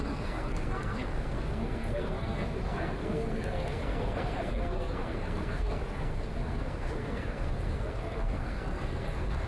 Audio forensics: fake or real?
fake